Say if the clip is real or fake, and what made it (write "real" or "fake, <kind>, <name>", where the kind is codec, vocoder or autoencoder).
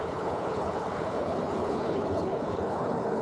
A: fake, codec, HILCodec